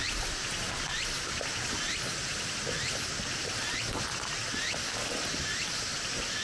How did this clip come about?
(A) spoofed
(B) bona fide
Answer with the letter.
B